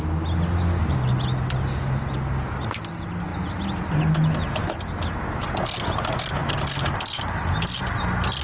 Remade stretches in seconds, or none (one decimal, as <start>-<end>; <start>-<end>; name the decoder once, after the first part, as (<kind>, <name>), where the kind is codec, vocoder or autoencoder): none